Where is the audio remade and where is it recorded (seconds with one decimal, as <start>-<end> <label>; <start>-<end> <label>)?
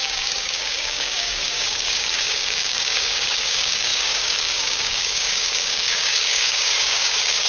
0.0-7.5 remade